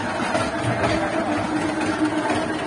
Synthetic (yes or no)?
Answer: no